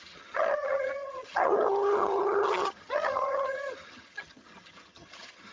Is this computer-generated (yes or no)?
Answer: yes